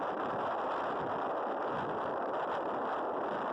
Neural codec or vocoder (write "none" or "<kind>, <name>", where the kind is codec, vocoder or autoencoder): none